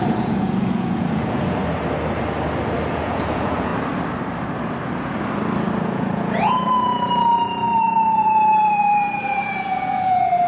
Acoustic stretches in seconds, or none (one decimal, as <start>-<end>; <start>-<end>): 1.6-2.9; 3.7-5.8